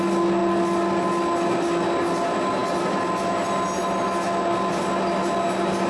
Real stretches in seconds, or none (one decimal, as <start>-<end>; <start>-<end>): 0.0-5.9